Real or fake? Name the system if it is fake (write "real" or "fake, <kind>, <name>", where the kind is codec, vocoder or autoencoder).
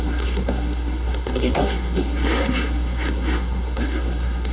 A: fake, codec, SNAC